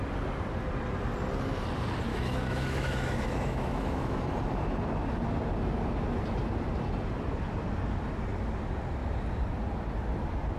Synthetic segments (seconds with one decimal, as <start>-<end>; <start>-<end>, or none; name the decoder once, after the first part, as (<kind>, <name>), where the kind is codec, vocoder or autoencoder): 2.1-4.2 (autoencoder, DAC-VAE)